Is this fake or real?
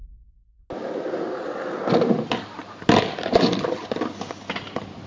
real